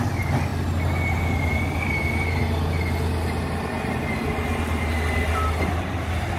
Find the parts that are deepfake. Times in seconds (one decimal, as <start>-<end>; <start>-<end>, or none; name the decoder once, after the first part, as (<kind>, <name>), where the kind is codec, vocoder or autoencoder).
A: none